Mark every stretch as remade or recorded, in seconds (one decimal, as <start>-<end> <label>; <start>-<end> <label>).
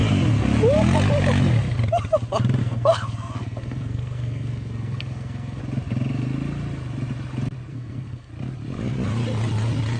0.0-2.6 recorded; 2.6-5.6 remade; 5.6-7.7 recorded; 7.7-8.3 remade; 8.3-10.0 recorded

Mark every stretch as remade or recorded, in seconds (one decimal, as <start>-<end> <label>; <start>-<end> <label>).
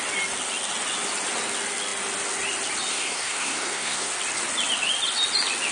0.0-2.9 recorded; 2.9-4.1 remade; 4.1-5.7 recorded